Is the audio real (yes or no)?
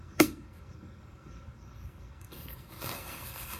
no